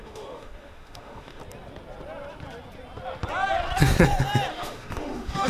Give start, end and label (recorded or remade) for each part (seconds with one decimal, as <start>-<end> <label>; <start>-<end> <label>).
0.0-1.4 remade; 1.4-4.5 recorded; 4.5-5.5 remade